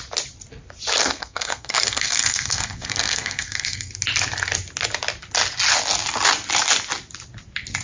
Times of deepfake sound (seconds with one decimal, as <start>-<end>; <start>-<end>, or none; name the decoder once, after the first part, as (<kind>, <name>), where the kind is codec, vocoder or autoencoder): 1.0-3.9 (codec, SNAC)